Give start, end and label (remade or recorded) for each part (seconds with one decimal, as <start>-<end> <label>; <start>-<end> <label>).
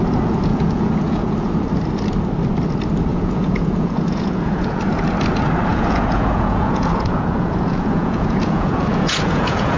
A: 0.0-0.5 recorded; 0.5-1.5 remade; 1.5-3.1 recorded; 3.1-4.8 remade; 4.8-5.7 recorded; 5.7-9.8 remade